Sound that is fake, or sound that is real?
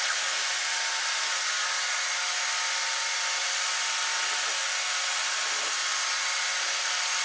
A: real